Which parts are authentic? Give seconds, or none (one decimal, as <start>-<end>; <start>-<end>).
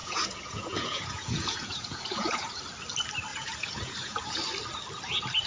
2.6-3.3; 4.4-5.5